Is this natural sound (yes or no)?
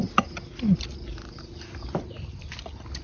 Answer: yes